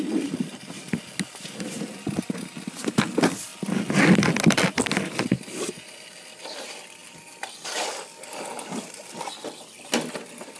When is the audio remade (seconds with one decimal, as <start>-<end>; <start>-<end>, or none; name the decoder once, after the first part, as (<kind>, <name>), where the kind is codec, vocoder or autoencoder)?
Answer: none